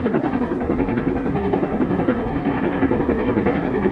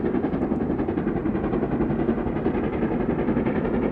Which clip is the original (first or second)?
second